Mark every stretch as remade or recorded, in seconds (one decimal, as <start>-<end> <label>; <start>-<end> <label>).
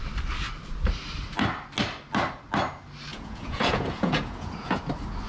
0.0-3.1 recorded; 3.1-4.8 remade; 4.8-5.3 recorded